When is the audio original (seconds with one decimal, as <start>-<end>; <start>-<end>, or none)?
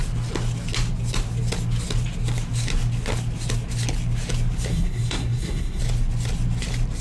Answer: 0.0-4.7; 5.8-7.0